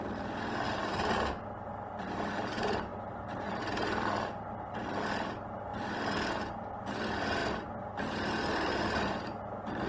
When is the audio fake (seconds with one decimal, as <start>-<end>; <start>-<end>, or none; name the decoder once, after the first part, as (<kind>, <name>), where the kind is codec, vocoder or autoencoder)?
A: none